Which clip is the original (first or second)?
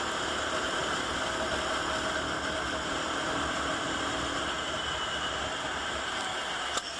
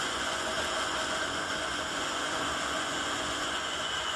first